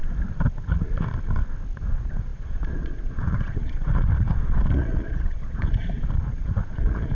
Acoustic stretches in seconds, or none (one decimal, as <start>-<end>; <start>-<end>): 0.0-1.9